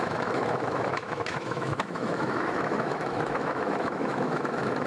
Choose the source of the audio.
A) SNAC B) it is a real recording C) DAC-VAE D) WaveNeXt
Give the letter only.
C